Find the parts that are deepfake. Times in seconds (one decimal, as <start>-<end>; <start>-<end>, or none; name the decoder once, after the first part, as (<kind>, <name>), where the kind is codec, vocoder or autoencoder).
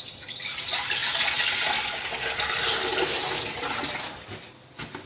none